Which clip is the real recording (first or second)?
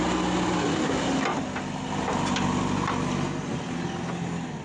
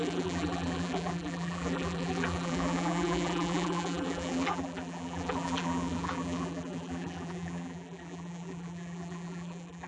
first